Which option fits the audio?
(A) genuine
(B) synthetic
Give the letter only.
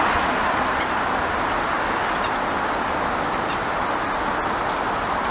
A